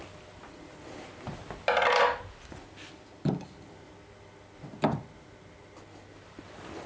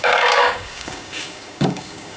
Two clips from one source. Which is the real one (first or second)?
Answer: first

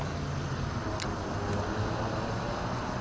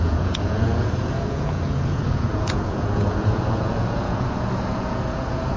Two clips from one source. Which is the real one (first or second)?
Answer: first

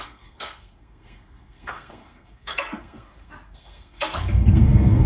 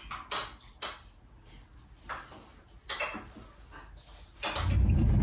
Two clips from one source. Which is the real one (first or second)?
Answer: second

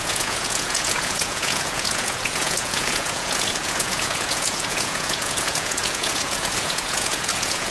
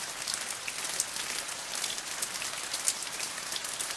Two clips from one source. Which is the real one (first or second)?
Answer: second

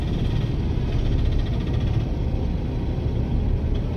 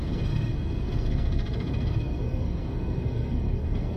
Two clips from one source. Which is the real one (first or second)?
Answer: first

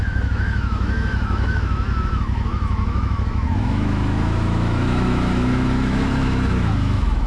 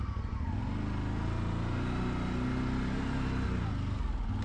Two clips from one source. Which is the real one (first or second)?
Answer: second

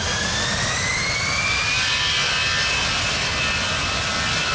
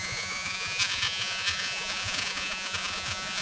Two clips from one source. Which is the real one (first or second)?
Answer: first